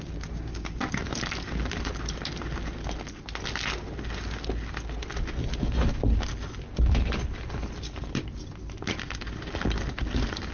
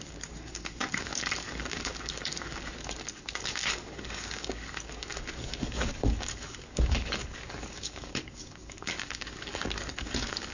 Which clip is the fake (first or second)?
second